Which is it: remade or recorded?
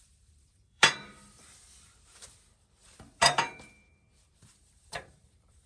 remade